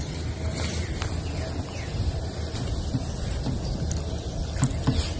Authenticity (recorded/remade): recorded